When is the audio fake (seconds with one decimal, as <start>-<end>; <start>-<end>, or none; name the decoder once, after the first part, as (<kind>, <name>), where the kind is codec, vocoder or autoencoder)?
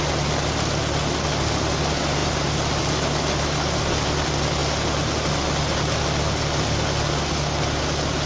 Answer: none